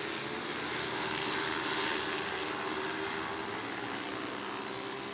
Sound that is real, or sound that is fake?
real